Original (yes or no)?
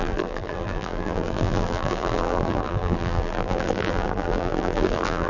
no